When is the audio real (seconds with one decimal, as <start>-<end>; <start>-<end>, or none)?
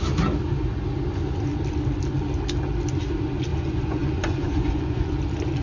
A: 0.0-3.5; 5.1-5.6